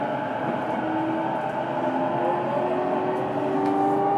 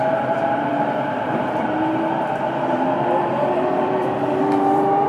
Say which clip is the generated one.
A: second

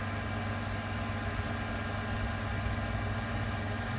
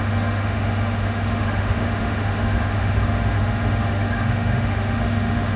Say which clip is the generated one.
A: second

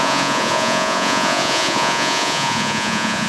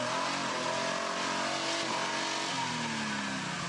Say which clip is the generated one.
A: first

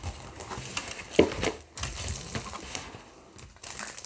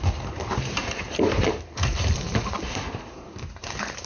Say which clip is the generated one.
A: second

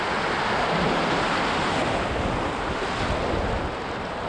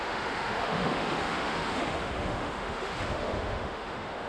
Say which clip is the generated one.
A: second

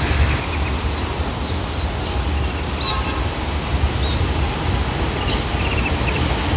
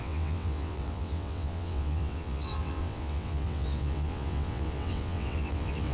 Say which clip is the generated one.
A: second